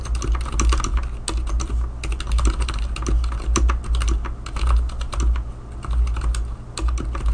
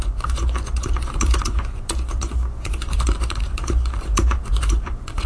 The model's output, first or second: second